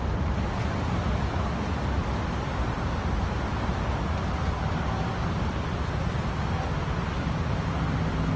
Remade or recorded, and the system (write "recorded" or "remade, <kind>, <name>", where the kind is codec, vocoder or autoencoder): recorded